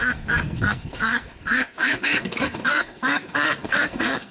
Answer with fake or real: fake